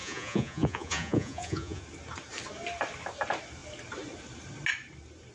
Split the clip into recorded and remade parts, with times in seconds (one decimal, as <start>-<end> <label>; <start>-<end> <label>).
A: 0.0-1.8 remade; 1.8-5.3 recorded